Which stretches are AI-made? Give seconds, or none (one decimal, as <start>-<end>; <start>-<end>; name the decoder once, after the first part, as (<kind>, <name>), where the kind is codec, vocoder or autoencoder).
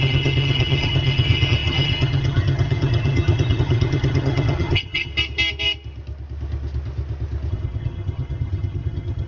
0.0-5.1 (vocoder, HiFi-GAN); 7.5-9.3